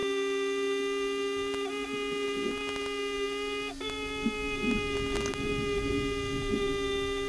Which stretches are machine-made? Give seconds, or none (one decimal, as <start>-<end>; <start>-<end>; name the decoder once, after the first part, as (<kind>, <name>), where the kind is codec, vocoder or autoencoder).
none